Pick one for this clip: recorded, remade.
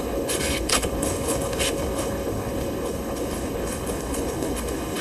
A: remade